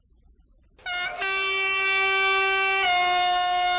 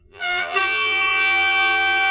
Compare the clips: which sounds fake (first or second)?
second